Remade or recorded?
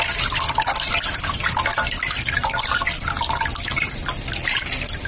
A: recorded